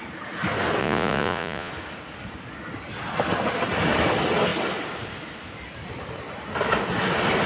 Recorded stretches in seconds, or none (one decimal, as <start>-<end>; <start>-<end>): 0.0-0.8; 1.7-7.5